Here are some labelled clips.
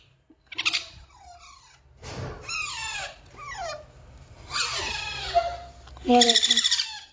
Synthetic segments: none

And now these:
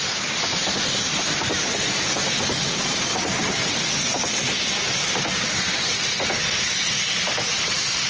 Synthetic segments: none